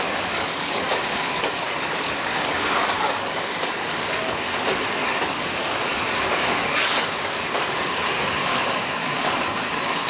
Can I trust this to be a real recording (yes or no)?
no